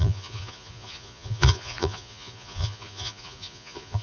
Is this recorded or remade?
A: remade